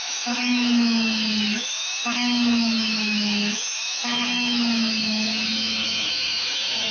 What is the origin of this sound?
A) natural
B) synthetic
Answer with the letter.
B